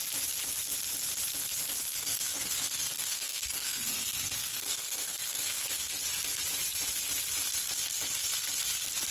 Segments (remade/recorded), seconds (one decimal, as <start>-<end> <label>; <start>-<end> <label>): 0.0-2.0 recorded; 2.0-5.9 remade; 5.9-9.1 recorded